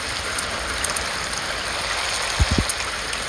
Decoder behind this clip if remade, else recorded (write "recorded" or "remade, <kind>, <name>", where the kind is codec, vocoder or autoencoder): recorded